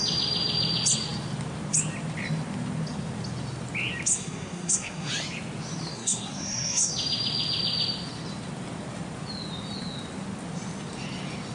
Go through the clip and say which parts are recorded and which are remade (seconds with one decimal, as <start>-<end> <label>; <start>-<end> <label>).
0.0-4.1 recorded; 4.1-5.1 remade; 5.1-5.9 recorded; 5.9-6.9 remade; 6.9-11.5 recorded